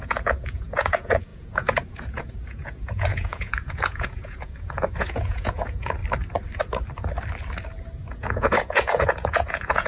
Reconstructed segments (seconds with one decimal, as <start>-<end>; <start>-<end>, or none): 0.0-6.0; 8.1-9.9